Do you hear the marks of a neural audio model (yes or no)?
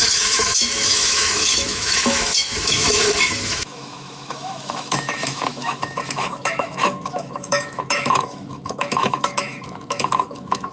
yes